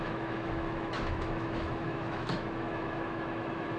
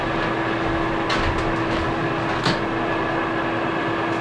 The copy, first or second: first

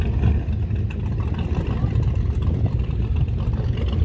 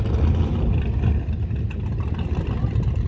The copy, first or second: second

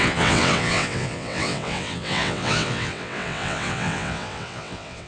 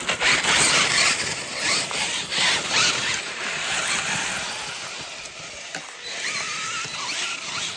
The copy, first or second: first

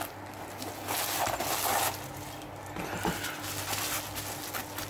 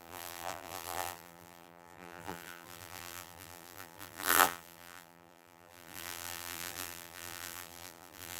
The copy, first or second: second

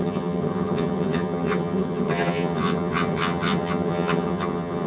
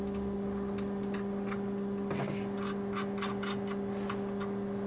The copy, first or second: first